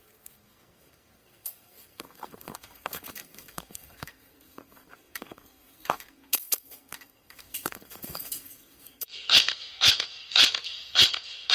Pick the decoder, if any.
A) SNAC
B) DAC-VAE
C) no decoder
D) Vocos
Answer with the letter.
A